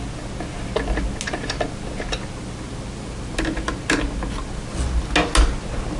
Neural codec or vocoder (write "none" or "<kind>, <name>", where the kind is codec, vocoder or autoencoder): none